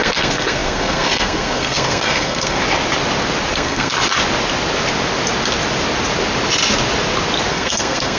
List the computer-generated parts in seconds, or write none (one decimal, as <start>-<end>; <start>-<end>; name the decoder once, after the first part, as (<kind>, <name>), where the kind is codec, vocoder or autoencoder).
0.0-2.6 (codec, SNAC); 3.5-3.9; 7.5-8.2